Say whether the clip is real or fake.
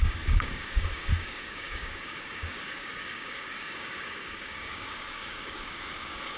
fake